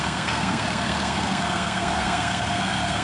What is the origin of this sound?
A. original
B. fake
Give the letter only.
B